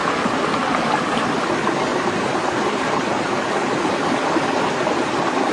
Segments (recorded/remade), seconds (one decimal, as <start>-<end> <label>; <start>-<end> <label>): 0.0-1.9 recorded; 1.9-3.3 remade; 3.3-5.5 recorded